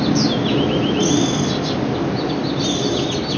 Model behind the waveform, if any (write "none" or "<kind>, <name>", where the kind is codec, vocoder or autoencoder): none